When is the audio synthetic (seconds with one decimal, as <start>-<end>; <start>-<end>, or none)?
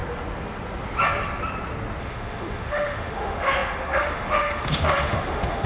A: 2.0-5.7